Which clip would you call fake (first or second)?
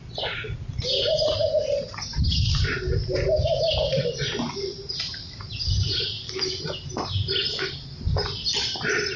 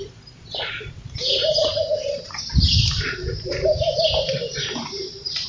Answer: second